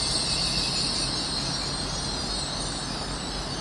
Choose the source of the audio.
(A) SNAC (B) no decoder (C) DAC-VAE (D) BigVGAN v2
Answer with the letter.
B